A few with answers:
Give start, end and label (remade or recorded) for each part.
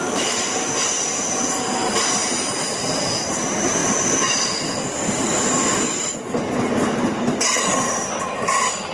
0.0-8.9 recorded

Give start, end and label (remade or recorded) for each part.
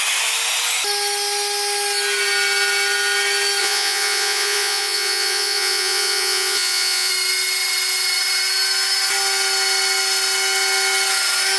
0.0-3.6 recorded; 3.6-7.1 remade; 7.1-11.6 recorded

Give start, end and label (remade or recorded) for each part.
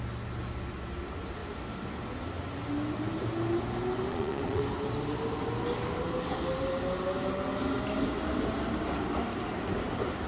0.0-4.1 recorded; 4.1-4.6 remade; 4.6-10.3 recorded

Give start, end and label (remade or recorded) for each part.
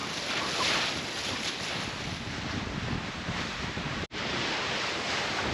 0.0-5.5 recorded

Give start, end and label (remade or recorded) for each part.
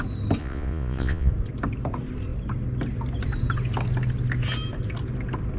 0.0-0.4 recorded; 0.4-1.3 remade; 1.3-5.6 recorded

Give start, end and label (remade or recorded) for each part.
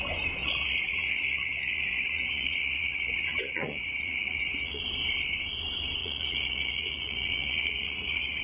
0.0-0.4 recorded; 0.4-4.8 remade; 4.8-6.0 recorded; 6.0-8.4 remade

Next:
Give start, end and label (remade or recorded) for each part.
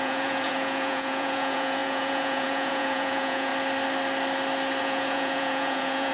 0.0-3.5 remade; 3.5-4.8 recorded; 4.8-6.1 remade